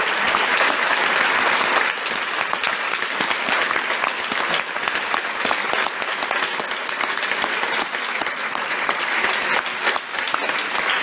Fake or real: real